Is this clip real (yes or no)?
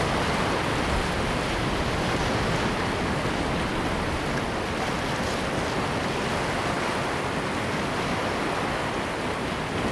yes